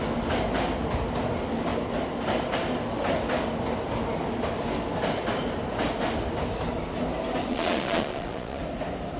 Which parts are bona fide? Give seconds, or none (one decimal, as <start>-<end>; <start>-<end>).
0.0-7.5; 8.6-9.2